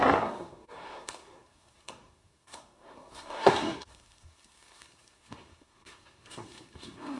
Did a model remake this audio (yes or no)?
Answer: yes